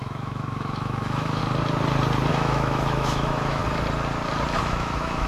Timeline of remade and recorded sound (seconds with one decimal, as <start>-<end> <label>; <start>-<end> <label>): 0.0-1.4 remade; 1.4-2.3 recorded; 2.3-3.6 remade; 3.6-4.6 recorded; 4.6-5.3 remade